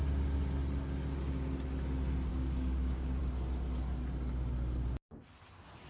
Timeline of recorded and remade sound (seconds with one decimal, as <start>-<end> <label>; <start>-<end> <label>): 0.0-2.3 recorded; 2.3-3.2 remade; 3.2-5.9 recorded